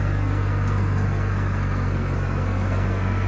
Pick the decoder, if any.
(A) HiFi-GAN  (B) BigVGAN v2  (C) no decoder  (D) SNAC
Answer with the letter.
D